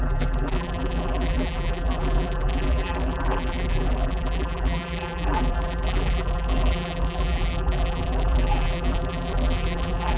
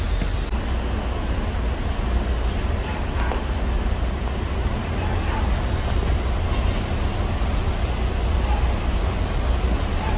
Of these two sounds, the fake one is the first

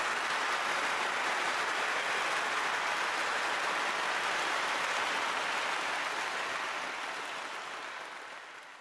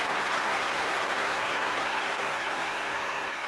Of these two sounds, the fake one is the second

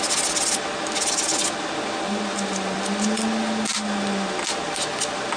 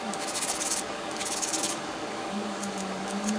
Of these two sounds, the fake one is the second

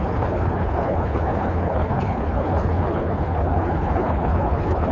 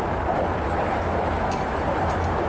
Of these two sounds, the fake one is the first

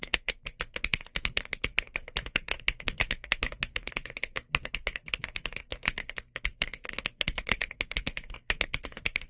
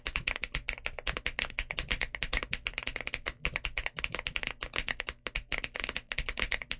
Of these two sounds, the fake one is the first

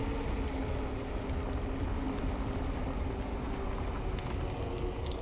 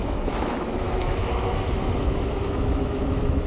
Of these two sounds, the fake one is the second